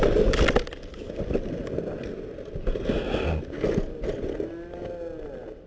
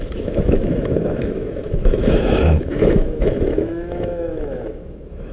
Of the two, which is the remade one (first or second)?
second